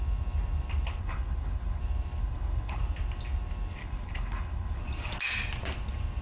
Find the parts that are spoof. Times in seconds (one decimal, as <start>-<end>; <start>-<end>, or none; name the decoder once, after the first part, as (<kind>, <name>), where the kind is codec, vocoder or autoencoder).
1.0-1.8 (codec, HILCodec); 2.2-2.8; 3.8-4.8